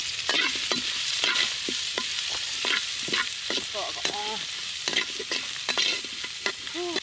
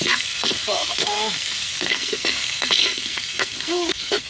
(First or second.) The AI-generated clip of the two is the second